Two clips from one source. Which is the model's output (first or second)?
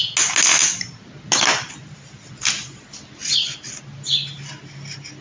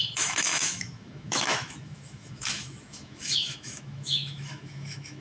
second